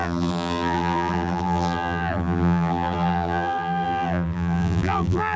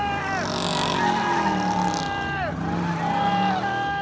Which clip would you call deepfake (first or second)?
first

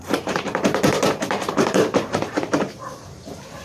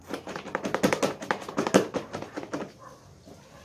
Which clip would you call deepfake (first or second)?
first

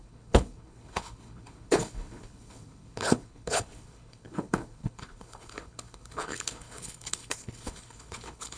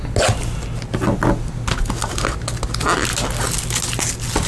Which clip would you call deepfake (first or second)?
first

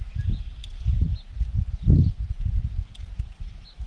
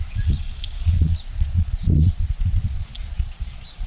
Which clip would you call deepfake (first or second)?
second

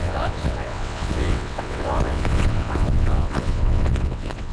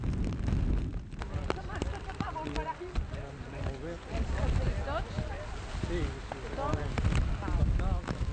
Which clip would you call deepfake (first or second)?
first